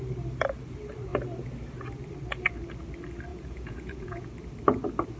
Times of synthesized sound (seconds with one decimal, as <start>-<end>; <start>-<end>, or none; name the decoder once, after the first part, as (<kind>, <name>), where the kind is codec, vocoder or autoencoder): 3.3-4.3 (vocoder, Vocos)